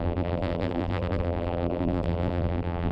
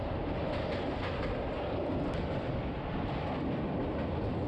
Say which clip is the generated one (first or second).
first